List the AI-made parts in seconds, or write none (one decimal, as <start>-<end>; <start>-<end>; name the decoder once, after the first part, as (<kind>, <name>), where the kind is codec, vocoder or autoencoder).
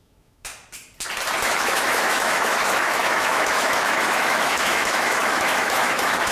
0.0-0.5 (autoencoder, DAC-VAE); 1.4-6.3